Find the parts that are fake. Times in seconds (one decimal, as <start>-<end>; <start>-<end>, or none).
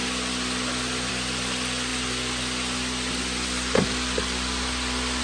none